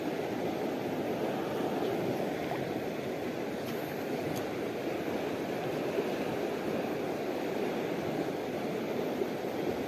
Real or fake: real